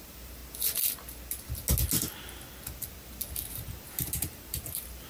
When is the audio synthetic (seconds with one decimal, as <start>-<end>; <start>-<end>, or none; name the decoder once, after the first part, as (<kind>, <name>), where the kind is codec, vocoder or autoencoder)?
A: 0.0-0.4 (vocoder, BigVGAN v2); 3.5-5.1